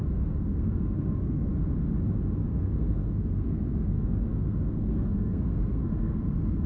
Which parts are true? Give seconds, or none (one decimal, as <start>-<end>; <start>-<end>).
1.5-2.5